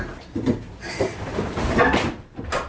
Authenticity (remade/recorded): recorded